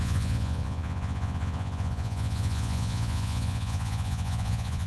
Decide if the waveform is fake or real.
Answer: fake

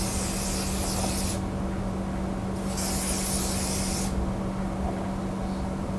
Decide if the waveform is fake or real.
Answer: real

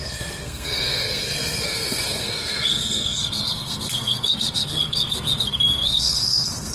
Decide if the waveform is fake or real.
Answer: fake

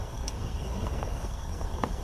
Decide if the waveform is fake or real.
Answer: fake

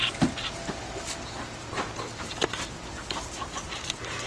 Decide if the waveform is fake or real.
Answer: real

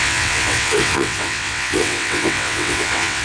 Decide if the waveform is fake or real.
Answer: fake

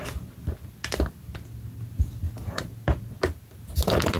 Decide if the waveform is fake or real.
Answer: real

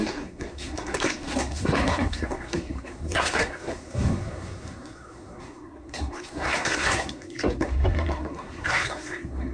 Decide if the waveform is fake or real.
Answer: fake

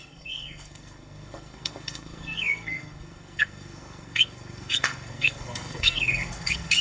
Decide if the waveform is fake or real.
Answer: fake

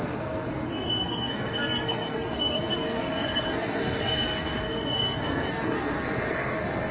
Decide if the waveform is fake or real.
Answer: fake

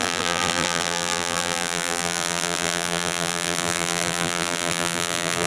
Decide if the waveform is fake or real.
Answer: fake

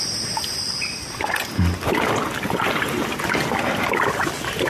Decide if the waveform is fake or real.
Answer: real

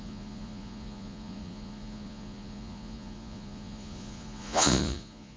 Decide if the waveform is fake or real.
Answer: fake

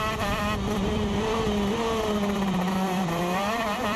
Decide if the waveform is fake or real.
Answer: fake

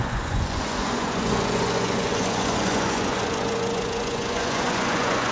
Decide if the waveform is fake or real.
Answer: fake